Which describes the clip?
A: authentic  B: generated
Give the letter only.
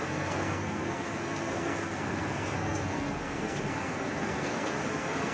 B